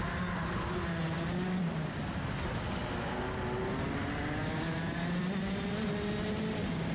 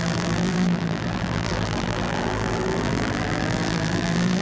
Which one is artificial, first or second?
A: second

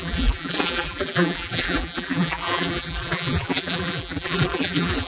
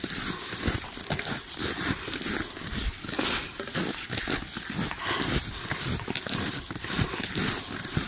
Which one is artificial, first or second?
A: first